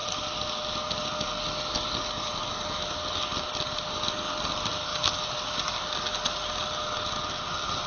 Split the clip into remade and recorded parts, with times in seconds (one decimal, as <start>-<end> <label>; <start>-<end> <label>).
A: 0.0-7.9 recorded